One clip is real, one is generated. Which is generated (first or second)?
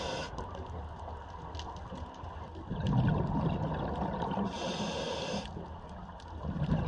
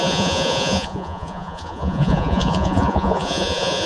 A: second